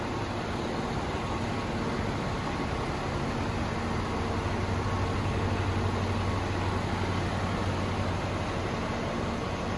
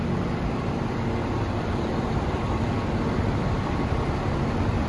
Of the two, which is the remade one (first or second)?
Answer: second